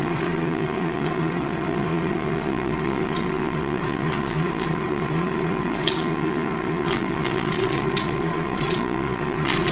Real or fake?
fake